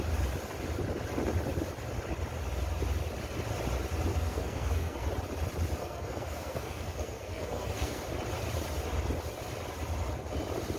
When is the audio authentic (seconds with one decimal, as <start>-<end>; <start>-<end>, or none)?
0.0-4.1; 5.1-5.8; 8.0-10.8